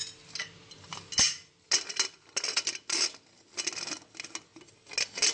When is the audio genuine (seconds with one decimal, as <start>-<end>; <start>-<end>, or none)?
0.0-5.3